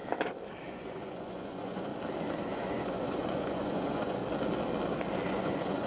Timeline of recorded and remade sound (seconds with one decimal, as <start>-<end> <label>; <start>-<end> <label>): 0.0-0.7 recorded; 0.7-1.9 remade; 1.9-2.4 recorded; 2.4-4.2 remade; 4.2-5.3 recorded; 5.3-5.9 remade